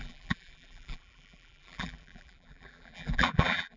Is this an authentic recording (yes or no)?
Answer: no